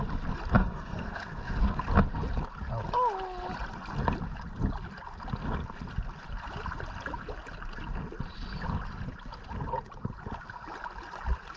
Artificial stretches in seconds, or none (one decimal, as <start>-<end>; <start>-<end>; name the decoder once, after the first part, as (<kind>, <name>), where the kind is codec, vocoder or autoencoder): 0.6-1.8 (codec, SNAC)